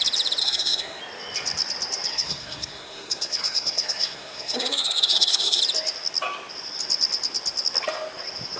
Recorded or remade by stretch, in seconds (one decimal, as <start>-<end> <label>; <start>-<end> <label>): 0.0-0.4 recorded; 0.4-1.0 remade; 1.0-2.1 recorded; 2.1-5.6 remade; 5.6-8.6 recorded